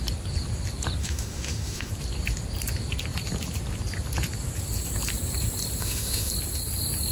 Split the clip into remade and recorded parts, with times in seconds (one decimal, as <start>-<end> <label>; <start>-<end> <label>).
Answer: 0.0-1.0 recorded; 1.0-1.9 remade; 1.9-5.8 recorded; 5.8-6.3 remade; 6.3-7.1 recorded